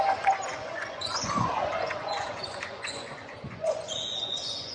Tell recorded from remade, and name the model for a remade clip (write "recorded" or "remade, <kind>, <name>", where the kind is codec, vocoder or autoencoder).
remade, vocoder, Vocos